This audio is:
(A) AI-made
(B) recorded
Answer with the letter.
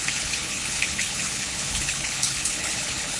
A